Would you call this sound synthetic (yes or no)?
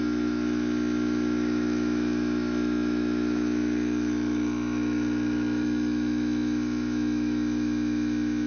yes